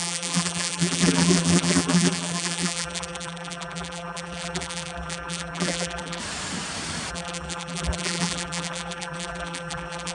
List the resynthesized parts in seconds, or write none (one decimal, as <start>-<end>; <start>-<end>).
0.0-6.2; 7.1-10.1